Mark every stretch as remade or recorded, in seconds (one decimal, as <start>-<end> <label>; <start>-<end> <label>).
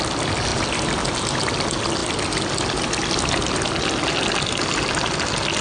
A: 0.0-5.6 recorded